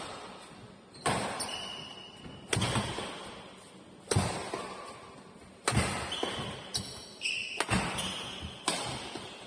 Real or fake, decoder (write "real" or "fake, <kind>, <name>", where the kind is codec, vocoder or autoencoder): real